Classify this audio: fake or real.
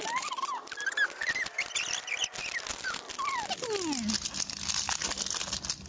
real